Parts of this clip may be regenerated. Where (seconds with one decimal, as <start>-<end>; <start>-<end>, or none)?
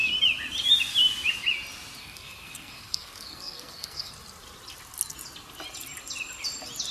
2.0-4.1